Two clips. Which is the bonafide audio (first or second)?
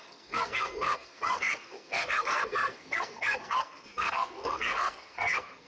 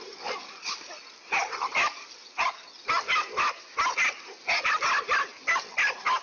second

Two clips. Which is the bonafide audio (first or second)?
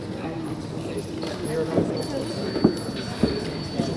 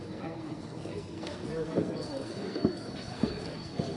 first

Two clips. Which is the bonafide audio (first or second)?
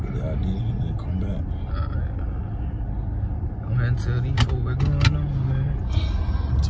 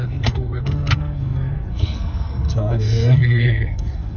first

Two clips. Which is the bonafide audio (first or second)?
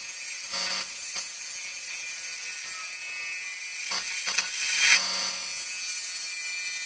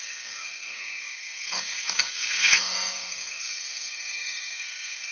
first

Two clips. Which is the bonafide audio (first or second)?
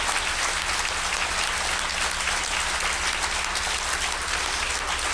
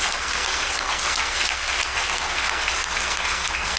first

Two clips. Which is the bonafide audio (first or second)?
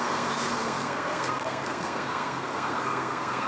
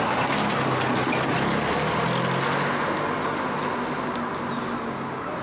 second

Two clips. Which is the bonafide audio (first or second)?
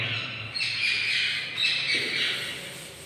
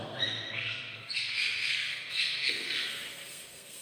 first